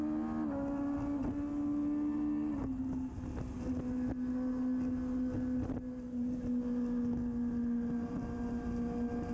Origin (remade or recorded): recorded